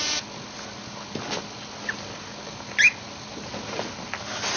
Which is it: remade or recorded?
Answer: recorded